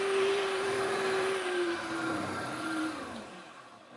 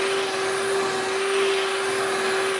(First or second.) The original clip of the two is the second